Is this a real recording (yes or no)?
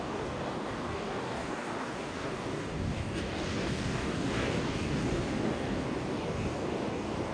no